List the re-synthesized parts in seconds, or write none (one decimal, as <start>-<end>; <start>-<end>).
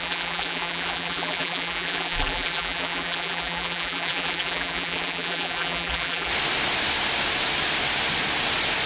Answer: 0.0-6.3